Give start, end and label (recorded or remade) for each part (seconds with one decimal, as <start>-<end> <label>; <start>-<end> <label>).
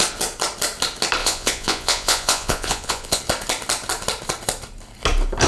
0.0-1.2 recorded; 1.2-3.2 remade; 3.2-5.5 recorded